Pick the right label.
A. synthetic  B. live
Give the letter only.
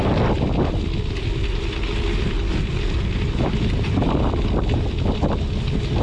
B